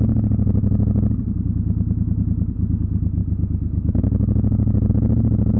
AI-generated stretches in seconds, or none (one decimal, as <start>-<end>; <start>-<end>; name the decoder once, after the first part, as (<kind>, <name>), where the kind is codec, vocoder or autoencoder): none